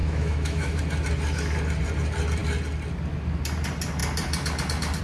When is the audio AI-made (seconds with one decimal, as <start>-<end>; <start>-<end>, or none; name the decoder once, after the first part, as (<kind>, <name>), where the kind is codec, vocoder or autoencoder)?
0.0-0.8 (autoencoder, DAC-VAE)